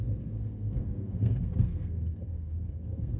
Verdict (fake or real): fake